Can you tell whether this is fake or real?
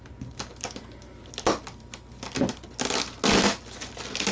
real